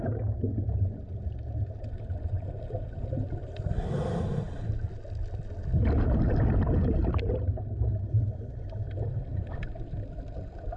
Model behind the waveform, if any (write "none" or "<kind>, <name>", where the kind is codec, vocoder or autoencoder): none